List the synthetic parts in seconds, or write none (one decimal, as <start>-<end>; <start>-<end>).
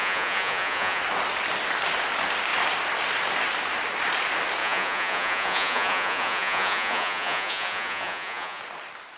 0.0-1.0; 4.6-8.6